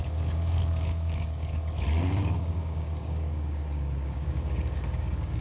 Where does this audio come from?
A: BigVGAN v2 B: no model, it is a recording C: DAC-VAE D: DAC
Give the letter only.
D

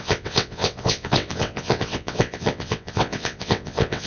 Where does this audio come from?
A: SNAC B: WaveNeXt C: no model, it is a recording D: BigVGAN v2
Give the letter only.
B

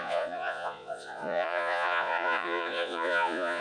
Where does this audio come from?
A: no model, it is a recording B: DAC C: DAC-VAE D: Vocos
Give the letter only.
D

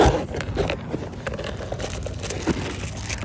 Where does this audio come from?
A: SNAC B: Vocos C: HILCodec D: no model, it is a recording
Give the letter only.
D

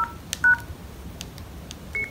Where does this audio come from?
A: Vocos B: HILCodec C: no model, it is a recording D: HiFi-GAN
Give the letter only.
C